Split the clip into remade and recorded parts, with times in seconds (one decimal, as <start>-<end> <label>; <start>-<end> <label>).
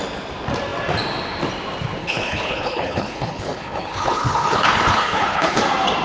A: 0.0-2.0 recorded; 2.0-5.6 remade; 5.6-6.0 recorded